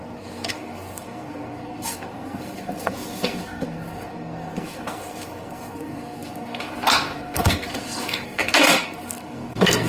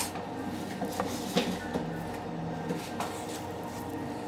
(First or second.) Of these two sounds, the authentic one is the second